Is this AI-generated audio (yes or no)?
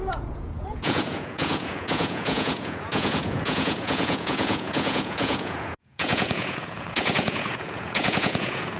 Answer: yes